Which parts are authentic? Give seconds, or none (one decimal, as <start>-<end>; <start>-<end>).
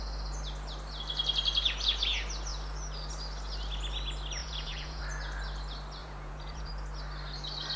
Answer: 0.0-4.4; 5.0-6.0; 6.7-7.8